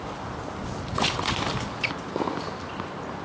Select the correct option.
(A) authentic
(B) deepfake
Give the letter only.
A